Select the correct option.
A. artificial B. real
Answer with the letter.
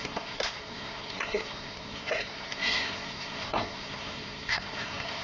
A